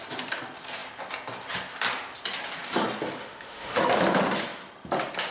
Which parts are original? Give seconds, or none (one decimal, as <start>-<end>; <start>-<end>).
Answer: 0.0-3.2; 3.8-5.3

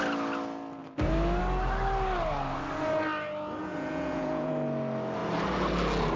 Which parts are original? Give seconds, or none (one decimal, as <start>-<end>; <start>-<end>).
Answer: 0.0-3.6; 4.5-6.2

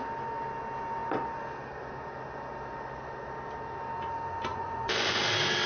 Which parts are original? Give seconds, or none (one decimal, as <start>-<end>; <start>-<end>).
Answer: 0.0-4.5; 5.2-5.7

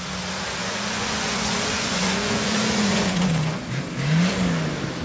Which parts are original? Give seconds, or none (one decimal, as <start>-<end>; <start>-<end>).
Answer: 0.0-0.6; 3.6-5.0

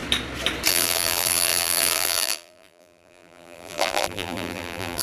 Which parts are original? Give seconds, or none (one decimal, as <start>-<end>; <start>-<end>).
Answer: 0.0-0.7